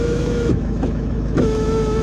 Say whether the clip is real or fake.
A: fake